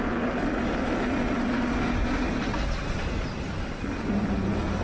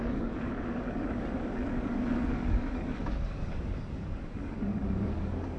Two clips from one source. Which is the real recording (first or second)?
first